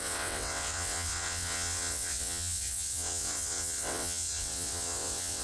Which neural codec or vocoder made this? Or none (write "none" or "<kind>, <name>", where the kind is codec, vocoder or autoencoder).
vocoder, WaveNeXt